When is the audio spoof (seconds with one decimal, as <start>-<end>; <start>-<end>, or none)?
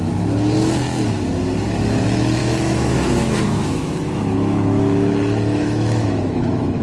2.4-6.8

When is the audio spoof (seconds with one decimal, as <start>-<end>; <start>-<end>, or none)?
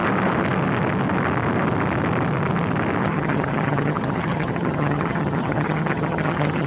3.0-6.7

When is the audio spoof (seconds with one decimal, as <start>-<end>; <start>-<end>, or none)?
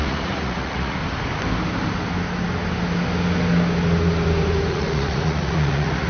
0.0-1.0; 4.7-6.1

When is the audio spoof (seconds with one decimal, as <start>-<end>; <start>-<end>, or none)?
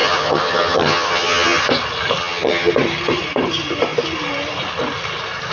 0.0-1.6; 2.2-2.7